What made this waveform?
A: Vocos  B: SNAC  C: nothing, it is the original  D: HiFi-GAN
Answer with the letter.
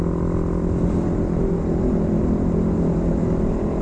C